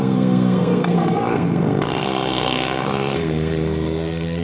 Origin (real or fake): fake